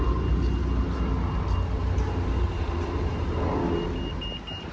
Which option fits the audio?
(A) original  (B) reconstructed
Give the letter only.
A